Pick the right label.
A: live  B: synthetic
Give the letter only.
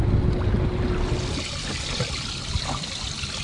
A